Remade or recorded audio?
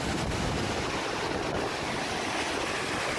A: recorded